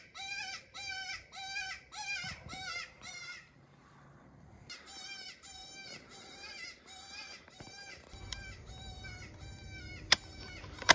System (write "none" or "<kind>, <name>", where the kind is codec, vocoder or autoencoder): vocoder, BigVGAN v2